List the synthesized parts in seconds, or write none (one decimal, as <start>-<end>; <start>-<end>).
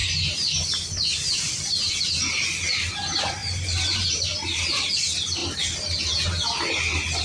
3.4-4.9